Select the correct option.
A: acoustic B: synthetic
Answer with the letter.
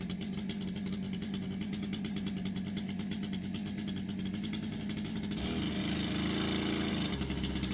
A